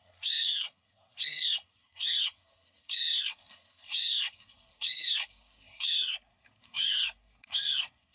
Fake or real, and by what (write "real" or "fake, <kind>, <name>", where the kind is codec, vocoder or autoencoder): fake, codec, SNAC